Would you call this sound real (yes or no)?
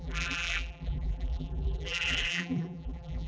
no